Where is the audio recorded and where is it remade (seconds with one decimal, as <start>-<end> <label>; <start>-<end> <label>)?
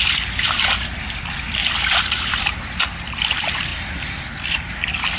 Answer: 0.0-5.2 recorded